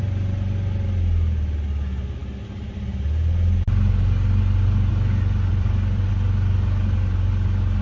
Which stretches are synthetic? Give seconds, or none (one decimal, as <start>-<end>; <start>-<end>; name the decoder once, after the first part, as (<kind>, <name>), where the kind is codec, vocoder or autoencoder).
5.5-6.1 (vocoder, BigVGAN v2)